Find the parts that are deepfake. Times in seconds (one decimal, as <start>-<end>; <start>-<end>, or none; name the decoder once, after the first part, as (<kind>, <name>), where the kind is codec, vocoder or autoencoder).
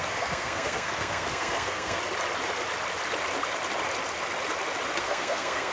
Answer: 0.0-2.0 (codec, SNAC); 5.0-5.7